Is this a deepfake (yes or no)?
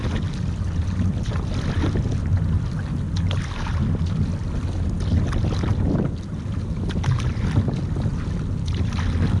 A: no